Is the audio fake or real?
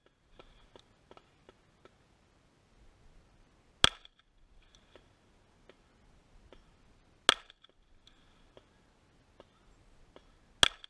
real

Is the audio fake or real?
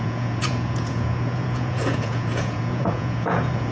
fake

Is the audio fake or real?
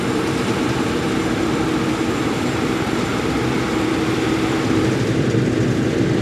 fake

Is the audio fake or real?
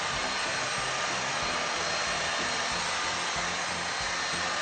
real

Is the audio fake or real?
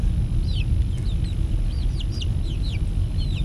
real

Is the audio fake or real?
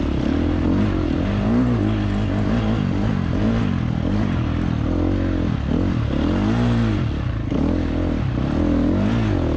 real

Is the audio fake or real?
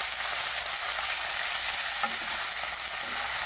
real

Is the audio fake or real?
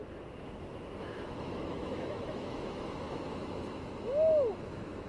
fake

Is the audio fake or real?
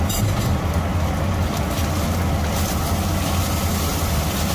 real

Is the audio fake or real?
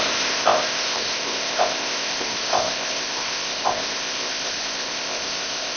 fake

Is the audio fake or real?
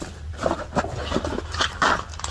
real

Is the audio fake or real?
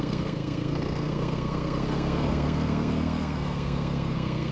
fake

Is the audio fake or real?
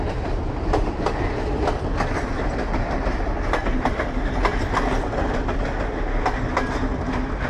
real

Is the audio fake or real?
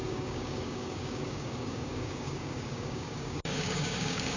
fake